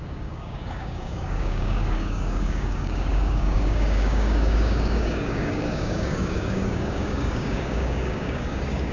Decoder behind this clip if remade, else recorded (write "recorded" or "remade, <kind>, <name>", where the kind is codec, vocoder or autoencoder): remade, codec, DAC